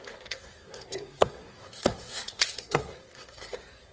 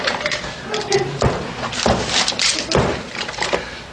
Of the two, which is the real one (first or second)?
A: second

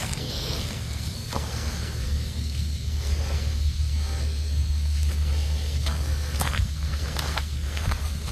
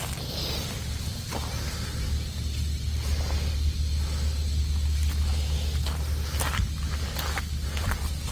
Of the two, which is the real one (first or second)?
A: second